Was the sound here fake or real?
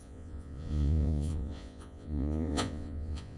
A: fake